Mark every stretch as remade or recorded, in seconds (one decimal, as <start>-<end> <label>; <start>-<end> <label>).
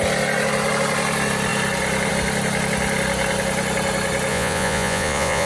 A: 0.0-4.3 recorded; 4.3-5.5 remade